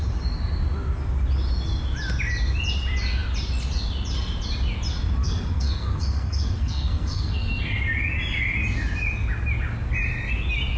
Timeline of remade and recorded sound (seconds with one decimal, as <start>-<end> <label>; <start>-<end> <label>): 0.0-5.2 recorded; 5.2-7.5 remade; 7.5-10.8 recorded